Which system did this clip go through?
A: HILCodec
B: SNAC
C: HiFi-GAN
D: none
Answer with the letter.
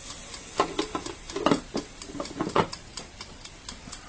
D